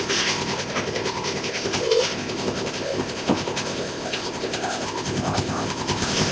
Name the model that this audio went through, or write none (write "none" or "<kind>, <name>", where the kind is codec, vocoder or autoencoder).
codec, ZipCodec